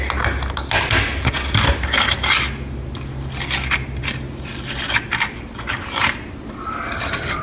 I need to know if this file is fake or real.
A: real